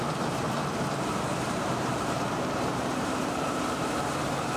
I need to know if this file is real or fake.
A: fake